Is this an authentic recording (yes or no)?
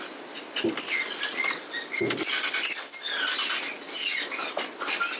yes